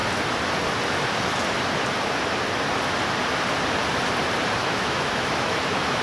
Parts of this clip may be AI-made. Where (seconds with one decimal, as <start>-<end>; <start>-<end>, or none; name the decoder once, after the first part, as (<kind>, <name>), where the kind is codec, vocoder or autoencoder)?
4.6-6.0 (autoencoder, DAC-VAE)